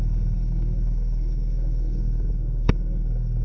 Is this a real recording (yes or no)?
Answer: no